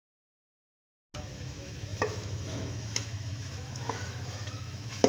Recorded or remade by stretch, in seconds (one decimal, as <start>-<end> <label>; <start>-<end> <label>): 0.0-0.5 remade; 0.5-1.2 recorded; 1.2-5.1 remade